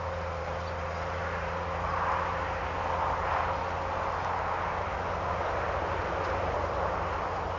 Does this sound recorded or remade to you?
recorded